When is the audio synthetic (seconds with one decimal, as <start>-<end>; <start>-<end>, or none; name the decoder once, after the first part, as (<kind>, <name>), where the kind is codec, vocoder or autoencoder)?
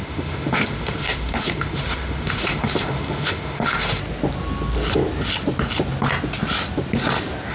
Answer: 0.0-4.0 (autoencoder, DAC-VAE)